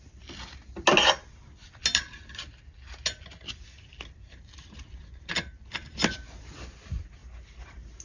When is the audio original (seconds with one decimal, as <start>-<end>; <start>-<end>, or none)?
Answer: 0.0-7.2